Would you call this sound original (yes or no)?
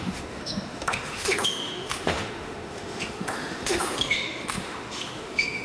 no